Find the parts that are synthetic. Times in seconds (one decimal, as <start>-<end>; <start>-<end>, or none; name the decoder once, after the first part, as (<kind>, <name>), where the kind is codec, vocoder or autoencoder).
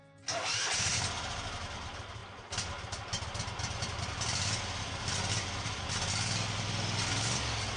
none